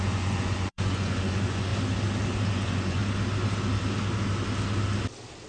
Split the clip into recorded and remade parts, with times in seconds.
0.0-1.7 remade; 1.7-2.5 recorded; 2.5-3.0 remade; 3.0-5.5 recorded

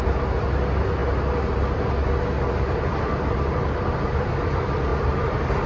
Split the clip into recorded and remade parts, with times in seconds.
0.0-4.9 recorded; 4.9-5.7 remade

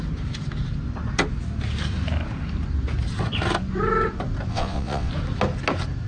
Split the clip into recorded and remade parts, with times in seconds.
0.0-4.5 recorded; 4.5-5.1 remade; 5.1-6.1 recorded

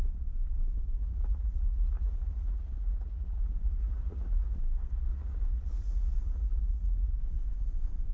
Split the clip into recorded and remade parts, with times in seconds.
0.0-1.0 recorded; 1.0-4.6 remade; 4.6-5.1 recorded; 5.1-7.1 remade; 7.1-8.1 recorded